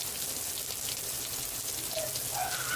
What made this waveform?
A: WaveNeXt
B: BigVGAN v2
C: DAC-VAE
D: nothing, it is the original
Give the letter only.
D